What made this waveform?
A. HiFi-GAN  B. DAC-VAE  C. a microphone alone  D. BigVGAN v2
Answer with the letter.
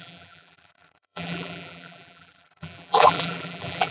D